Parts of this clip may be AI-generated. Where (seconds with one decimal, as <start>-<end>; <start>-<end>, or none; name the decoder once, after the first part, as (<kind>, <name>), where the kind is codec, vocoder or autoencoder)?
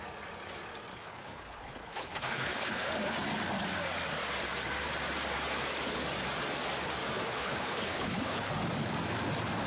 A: 0.9-2.9 (codec, HILCodec); 7.3-8.5